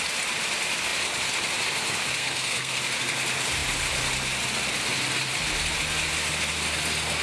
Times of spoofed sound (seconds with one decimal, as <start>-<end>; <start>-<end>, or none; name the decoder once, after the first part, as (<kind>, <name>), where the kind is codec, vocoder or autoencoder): 2.2-2.8 (codec, SNAC)